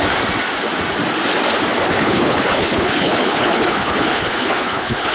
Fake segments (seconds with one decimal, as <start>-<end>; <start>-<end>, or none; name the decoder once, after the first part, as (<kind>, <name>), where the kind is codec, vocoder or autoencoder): 1.9-5.1 (codec, HILCodec)